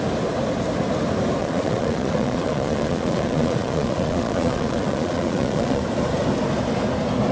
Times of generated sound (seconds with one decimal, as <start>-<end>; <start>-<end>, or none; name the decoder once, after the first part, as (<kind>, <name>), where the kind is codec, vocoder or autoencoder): 1.4-5.8 (vocoder, Vocos)